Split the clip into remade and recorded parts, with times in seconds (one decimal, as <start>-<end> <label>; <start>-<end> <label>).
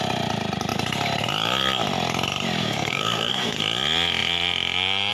0.0-2.6 recorded; 2.6-3.6 remade; 3.6-5.1 recorded